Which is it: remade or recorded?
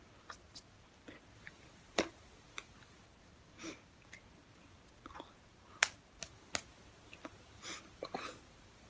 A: recorded